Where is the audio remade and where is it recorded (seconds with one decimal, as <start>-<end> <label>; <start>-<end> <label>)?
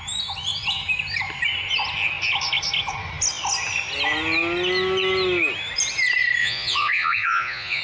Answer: 0.0-6.4 recorded; 6.4-7.8 remade